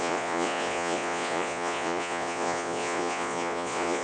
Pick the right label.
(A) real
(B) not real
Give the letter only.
B